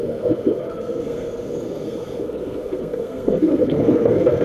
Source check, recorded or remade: remade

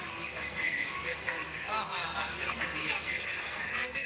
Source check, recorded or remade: remade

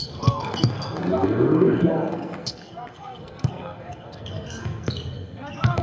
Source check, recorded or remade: remade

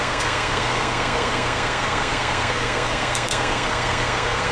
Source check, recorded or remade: remade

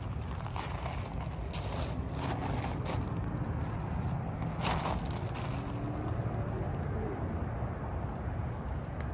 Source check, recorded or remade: recorded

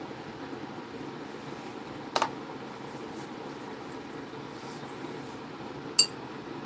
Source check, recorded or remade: recorded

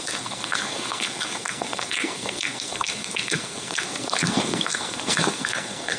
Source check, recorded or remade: remade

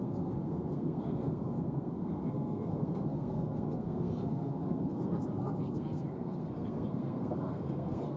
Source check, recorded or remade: remade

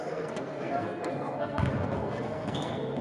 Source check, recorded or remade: remade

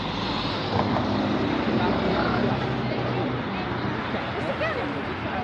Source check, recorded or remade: recorded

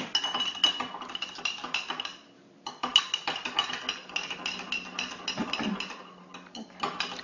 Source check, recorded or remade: recorded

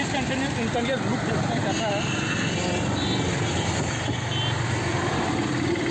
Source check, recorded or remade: recorded